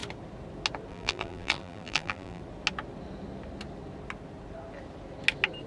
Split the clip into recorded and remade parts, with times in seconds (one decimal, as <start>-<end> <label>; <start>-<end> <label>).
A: 0.0-0.9 recorded; 0.9-2.4 remade; 2.4-5.7 recorded